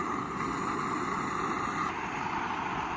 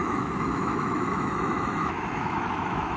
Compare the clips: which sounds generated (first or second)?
second